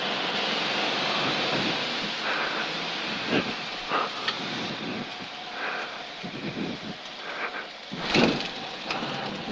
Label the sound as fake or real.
real